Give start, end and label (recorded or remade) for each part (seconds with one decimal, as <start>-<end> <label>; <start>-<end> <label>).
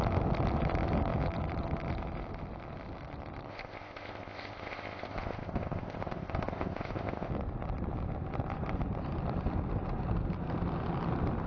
0.0-3.5 recorded; 3.5-7.3 remade; 7.3-11.5 recorded